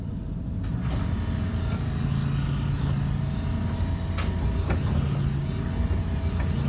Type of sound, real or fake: real